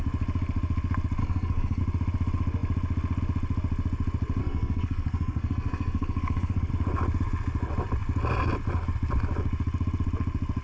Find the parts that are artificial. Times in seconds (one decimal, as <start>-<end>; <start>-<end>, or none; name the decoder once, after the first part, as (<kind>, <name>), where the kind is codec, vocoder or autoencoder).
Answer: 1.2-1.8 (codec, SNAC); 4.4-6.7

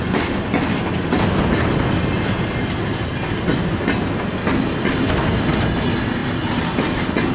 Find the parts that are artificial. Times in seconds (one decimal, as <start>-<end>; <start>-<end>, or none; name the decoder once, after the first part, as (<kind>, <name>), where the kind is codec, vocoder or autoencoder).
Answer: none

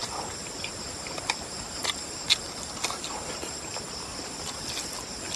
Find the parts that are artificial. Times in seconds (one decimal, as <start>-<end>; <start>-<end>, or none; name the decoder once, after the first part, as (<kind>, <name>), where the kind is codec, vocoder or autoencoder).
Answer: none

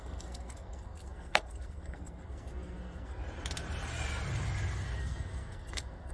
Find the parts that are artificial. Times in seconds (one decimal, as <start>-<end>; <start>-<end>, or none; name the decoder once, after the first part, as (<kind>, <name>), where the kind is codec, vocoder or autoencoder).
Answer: 0.0-3.2 (codec, SNAC); 5.0-6.1

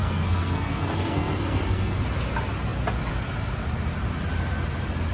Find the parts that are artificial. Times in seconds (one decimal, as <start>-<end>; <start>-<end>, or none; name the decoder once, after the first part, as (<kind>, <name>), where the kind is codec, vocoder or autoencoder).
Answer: 0.0-2.0 (codec, SNAC)

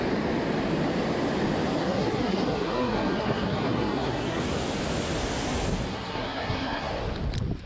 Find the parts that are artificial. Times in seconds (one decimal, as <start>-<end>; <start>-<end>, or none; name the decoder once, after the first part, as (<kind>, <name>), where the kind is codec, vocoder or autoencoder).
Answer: 1.8-4.4 (codec, SNAC); 5.9-6.9

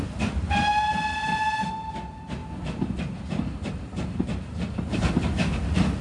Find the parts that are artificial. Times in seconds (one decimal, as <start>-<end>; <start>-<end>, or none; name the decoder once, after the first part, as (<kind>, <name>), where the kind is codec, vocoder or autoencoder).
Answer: 2.4-5.1 (vocoder, BigVGAN v2)